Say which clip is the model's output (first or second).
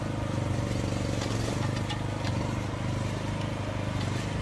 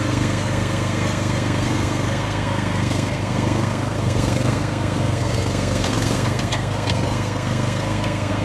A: second